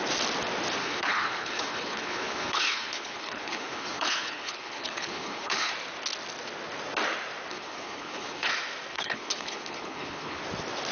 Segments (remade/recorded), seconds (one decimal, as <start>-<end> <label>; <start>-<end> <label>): 0.0-0.8 recorded; 0.8-5.7 remade; 5.7-7.5 recorded; 7.5-8.5 remade; 8.5-8.9 recorded; 8.9-10.4 remade; 10.4-10.9 recorded